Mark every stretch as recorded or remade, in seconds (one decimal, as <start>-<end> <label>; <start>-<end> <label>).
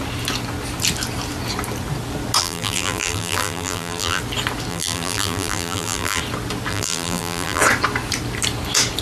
0.0-2.4 recorded; 2.4-4.2 remade; 4.2-4.7 recorded; 4.7-6.2 remade; 6.2-6.7 recorded; 6.7-7.6 remade; 7.6-9.0 recorded